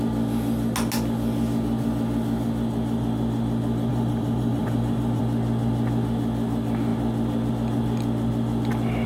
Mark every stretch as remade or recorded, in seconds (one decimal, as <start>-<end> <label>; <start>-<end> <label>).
0.0-3.9 recorded; 3.9-5.2 remade; 5.2-9.1 recorded